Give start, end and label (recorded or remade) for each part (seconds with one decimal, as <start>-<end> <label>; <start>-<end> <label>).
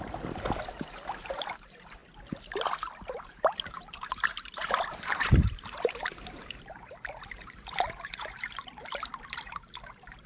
0.0-2.0 remade; 2.0-3.2 recorded; 3.2-10.3 remade